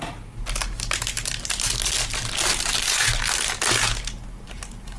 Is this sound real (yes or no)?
yes